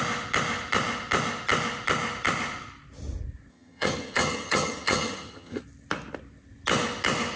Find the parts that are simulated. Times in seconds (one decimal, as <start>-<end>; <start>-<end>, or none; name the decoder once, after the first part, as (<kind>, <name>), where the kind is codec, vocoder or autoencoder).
3.5-5.6 (vocoder, HiFi-GAN)

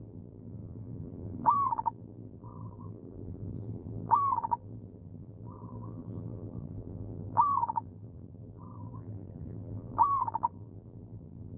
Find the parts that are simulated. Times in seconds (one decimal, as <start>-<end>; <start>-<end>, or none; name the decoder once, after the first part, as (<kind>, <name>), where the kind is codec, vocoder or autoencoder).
0.0-11.6 (vocoder, BigVGAN v2)

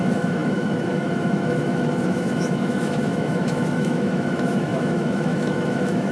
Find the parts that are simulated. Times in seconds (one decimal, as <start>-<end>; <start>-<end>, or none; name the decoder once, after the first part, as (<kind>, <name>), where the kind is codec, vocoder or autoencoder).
0.0-6.1 (autoencoder, DAC-VAE)

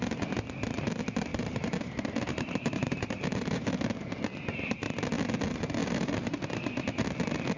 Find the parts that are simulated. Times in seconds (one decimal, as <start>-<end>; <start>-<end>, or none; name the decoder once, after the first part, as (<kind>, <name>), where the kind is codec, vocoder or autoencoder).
1.3-3.8 (vocoder, BigVGAN v2); 5.8-6.4

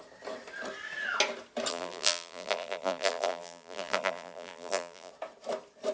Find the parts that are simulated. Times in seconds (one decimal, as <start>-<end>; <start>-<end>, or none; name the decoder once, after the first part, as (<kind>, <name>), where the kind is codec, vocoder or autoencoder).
1.7-5.1 (vocoder, BigVGAN v2)